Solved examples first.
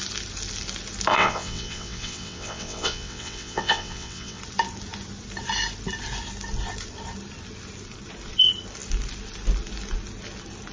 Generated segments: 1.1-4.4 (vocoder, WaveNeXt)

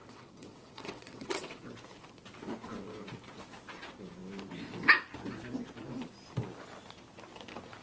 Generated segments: 0.0-1.6 (vocoder, WaveNeXt)

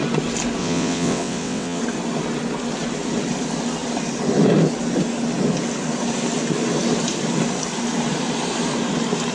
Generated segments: 0.6-1.8 (vocoder, WaveNeXt)

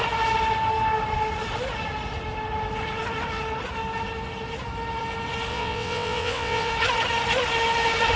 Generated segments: 5.5-6.7 (vocoder, WaveNeXt)